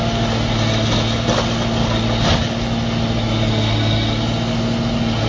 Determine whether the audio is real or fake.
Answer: real